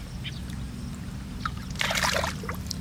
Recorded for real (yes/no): yes